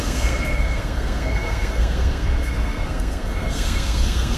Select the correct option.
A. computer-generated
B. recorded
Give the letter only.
A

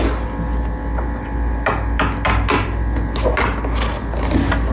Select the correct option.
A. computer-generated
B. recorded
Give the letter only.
B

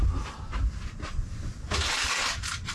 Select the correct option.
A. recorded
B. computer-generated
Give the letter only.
A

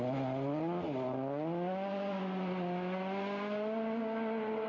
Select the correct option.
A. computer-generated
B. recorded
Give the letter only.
B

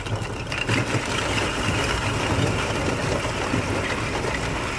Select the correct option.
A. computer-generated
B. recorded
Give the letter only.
B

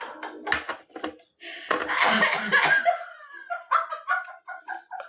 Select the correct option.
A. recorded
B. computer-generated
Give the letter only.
A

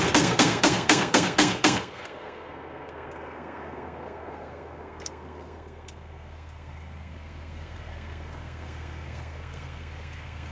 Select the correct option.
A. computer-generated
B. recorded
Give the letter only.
A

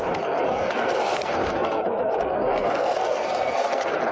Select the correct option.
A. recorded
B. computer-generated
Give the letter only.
B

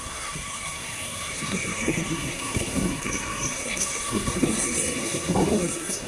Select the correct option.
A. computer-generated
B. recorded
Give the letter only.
A